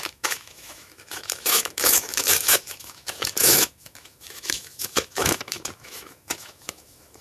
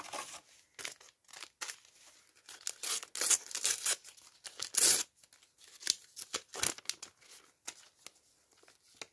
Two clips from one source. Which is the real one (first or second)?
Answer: second